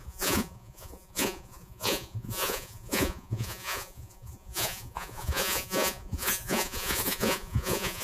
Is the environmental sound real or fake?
fake